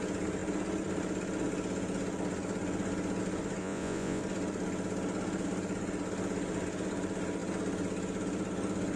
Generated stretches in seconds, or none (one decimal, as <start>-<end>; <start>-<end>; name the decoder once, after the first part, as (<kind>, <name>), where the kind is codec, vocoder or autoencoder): 3.6-4.2 (vocoder, Vocos)